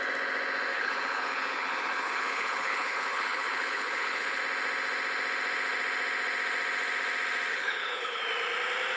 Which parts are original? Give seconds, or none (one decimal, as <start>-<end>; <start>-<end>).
0.0-0.7; 4.4-7.5; 8.2-9.0